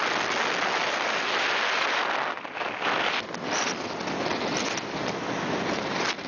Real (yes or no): yes